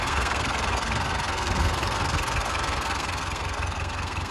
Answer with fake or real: fake